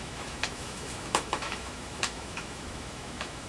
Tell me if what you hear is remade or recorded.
remade